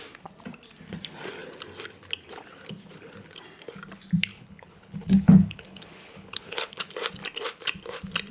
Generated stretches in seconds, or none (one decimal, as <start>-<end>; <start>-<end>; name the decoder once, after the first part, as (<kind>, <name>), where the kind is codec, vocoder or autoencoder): 4.3-6.8 (codec, HILCodec)